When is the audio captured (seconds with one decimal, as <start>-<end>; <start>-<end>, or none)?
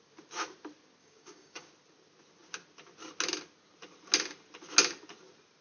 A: 0.0-1.0; 1.7-5.6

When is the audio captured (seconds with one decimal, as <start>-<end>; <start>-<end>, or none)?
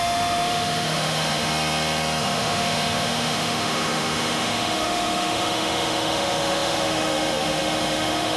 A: 1.5-2.2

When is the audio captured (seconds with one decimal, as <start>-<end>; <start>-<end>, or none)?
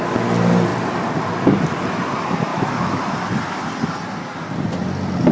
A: 0.0-2.5; 3.0-5.3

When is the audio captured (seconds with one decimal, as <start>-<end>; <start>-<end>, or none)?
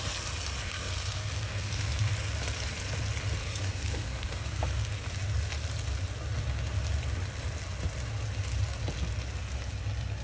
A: 0.0-0.6; 2.1-3.4; 4.9-10.2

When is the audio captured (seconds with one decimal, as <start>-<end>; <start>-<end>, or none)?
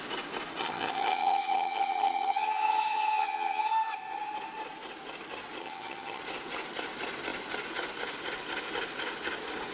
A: 0.0-0.6; 3.7-5.6; 6.2-9.7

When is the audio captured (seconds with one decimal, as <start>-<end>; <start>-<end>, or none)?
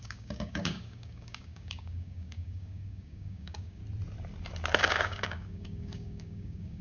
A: 3.8-4.8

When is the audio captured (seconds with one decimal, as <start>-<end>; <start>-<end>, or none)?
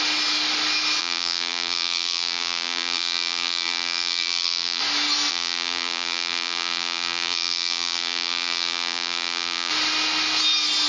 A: 0.0-1.0; 4.8-5.3; 9.7-10.9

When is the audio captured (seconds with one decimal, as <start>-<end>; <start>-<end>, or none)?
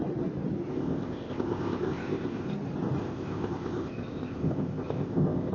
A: 0.0-0.7; 2.5-3.0